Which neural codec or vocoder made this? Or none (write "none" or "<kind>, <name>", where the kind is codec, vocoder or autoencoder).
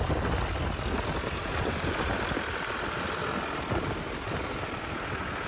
none